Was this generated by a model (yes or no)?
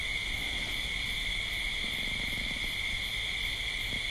no